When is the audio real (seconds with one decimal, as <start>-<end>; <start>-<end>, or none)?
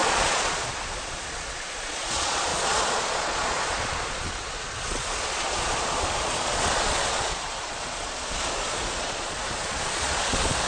none